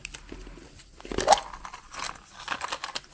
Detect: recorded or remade recorded